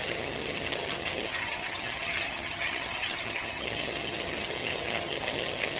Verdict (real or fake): fake